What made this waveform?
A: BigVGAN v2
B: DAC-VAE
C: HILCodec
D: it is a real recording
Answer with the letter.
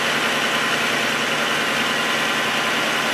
D